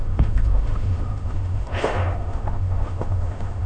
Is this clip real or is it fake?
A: fake